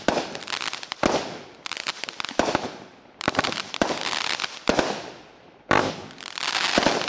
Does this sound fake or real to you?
fake